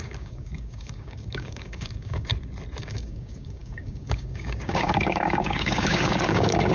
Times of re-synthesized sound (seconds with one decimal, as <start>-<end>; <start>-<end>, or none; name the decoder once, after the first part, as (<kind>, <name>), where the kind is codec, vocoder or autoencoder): 0.0-2.3 (codec, DAC); 2.8-6.7